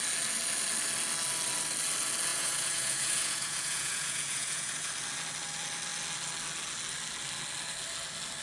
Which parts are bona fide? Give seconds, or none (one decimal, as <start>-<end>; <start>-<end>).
0.0-2.3; 4.9-8.4